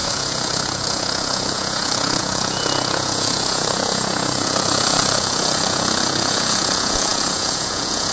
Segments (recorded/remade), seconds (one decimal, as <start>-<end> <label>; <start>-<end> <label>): 0.0-8.1 remade